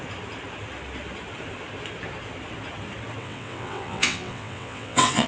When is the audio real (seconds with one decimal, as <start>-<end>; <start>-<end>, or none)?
0.0-3.2